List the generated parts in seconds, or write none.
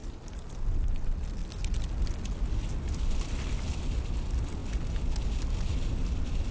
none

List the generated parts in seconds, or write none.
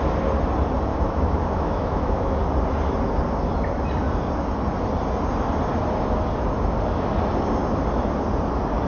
0.9-2.4 (autoencoder, DAC-VAE)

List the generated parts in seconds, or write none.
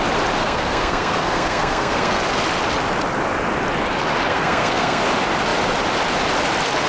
0.4-2.2 (codec, SNAC); 4.3-5.0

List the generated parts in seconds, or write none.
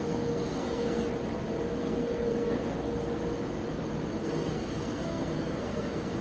0.0-1.1 (codec, SNAC); 1.8-3.2; 4.2-6.2